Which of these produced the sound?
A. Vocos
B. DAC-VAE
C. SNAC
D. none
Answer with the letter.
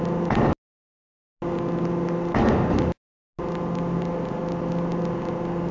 D